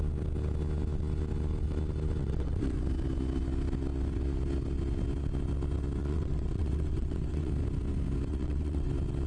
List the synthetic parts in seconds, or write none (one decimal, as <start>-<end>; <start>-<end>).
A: 2.2-2.8; 6.0-7.5; 8.3-8.9